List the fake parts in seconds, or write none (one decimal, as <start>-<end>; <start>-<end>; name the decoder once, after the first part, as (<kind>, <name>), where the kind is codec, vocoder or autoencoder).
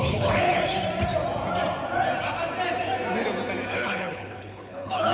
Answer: 0.0-0.6 (codec, HILCodec); 3.7-5.1